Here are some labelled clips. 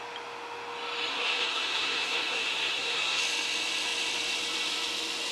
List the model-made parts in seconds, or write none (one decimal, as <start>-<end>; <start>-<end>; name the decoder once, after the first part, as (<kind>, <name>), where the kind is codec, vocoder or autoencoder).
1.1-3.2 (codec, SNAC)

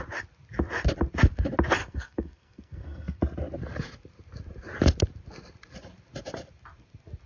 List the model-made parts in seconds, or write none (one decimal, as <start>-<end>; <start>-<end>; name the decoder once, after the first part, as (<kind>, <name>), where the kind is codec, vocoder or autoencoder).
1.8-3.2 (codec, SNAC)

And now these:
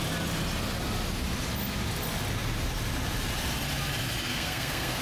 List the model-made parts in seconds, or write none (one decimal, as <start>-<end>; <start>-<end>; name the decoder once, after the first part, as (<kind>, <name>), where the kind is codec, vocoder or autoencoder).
4.3-5.0 (codec, SNAC)

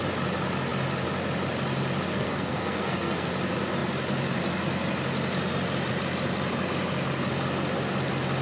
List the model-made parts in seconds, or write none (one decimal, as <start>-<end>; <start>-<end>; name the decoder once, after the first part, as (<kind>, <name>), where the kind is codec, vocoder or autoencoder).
2.1-3.3 (codec, SNAC)

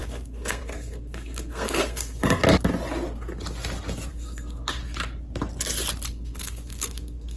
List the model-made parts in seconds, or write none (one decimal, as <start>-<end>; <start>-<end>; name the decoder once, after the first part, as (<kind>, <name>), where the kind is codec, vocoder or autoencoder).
0.0-2.4 (codec, SNAC); 4.1-4.8; 6.1-7.4

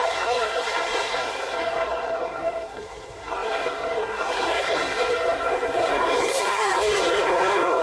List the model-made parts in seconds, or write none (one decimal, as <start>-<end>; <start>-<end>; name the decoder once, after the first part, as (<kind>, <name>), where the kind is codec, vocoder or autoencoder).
0.0-7.8 (codec, SNAC)

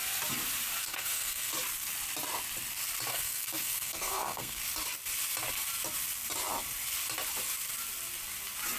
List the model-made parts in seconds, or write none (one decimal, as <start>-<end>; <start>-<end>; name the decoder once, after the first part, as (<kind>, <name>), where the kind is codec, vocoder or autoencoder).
0.8-1.5 (codec, SNAC); 3.1-4.6